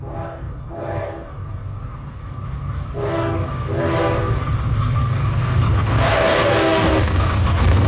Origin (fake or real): fake